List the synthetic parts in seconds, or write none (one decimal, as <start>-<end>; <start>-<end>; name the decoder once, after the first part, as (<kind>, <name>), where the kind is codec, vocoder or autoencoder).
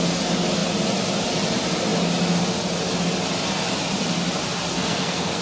4.7-5.4 (codec, SNAC)